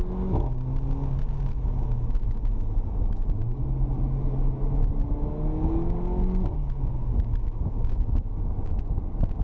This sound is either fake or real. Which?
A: real